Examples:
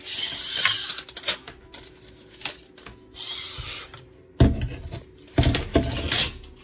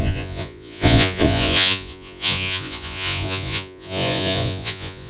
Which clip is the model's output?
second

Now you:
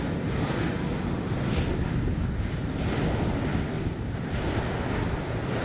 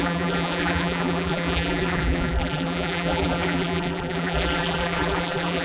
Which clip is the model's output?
second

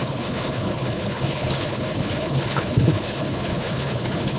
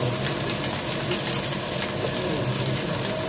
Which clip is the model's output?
first